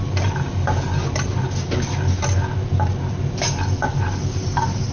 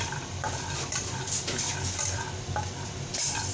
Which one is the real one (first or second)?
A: first